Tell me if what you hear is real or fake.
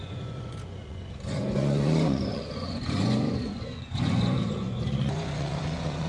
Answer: fake